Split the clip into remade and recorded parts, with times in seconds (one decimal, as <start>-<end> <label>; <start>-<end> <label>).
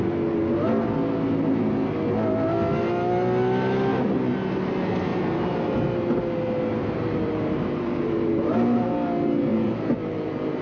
0.0-6.8 recorded; 6.8-8.9 remade; 8.9-9.5 recorded; 9.5-10.6 remade